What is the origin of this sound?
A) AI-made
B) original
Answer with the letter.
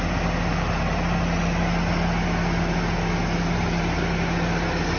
B